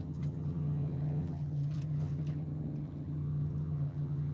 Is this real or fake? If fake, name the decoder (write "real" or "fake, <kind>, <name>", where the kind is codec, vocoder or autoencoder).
fake, vocoder, HiFi-GAN